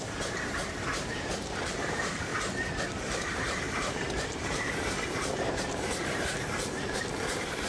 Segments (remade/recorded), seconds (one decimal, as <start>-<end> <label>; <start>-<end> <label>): 0.0-2.3 remade; 2.3-2.9 recorded; 2.9-7.7 remade